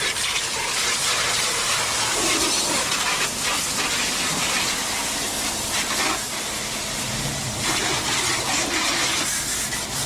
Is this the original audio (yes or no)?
yes